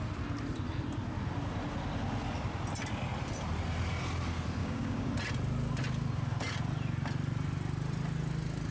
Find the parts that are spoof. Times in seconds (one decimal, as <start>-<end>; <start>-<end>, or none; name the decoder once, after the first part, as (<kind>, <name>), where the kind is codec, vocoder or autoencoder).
4.6-5.1 (codec, DAC)